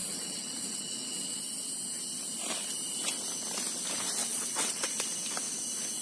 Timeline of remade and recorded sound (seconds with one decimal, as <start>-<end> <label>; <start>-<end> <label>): 0.0-1.4 remade; 1.4-4.2 recorded; 4.2-4.9 remade; 4.9-6.0 recorded